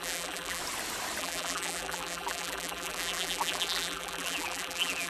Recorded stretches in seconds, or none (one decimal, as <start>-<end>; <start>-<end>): 0.6-1.2